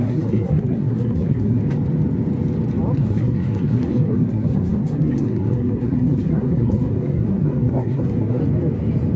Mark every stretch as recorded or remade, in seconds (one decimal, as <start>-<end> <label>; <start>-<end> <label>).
0.0-1.6 remade; 1.6-3.0 recorded; 3.0-8.4 remade; 8.4-9.2 recorded